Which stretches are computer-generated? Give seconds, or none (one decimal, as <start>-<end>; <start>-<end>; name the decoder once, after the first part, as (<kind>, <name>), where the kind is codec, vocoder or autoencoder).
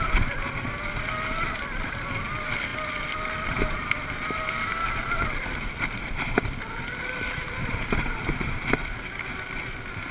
none